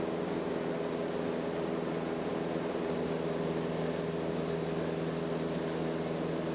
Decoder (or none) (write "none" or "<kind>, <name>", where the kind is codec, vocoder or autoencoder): none